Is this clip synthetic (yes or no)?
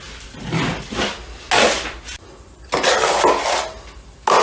no